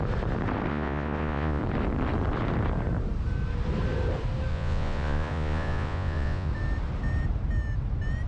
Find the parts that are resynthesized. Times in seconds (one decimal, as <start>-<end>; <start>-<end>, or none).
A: 0.7-1.6; 4.5-6.5